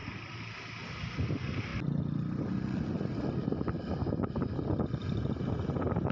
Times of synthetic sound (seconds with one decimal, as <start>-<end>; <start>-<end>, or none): 0.0-0.6